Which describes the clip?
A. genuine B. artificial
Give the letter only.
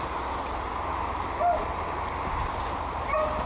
A